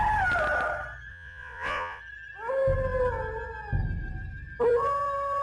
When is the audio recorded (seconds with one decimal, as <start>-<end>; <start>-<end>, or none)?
0.0-1.1; 2.0-5.4